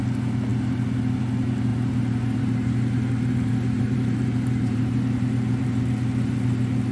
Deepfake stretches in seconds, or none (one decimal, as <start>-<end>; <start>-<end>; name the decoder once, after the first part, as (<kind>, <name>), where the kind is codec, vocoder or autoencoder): 1.7-5.8 (vocoder, BigVGAN v2)